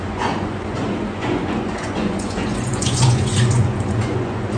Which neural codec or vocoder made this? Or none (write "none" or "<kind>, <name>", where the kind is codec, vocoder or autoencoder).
vocoder, Vocos